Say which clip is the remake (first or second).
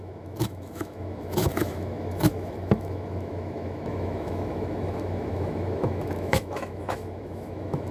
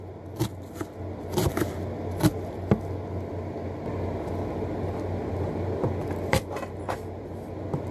first